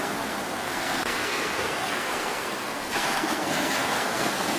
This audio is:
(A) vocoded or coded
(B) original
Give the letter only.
A